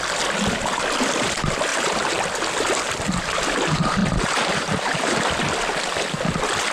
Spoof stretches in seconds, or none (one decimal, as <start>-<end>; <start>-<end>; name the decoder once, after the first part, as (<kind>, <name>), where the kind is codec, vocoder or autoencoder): 1.7-2.2 (vocoder, BigVGAN v2); 4.0-5.2